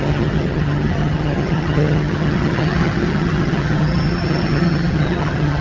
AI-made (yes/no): yes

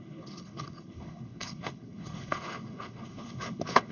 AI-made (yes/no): yes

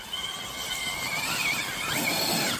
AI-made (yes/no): no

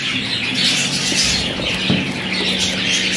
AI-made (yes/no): no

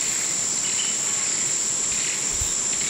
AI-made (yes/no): no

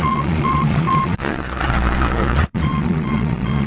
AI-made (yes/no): yes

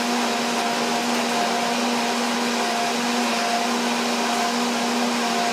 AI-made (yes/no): no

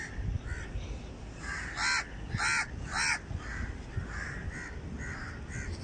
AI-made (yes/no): no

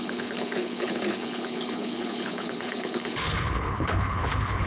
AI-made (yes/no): yes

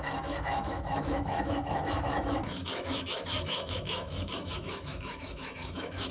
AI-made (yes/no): yes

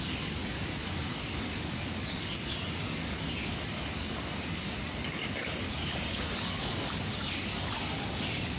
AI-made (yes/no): yes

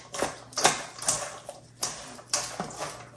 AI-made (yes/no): no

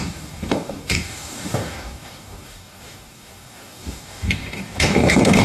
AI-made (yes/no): yes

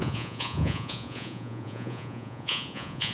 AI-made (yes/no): yes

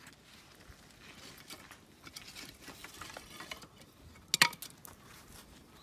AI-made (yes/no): no